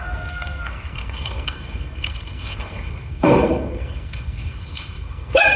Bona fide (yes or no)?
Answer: no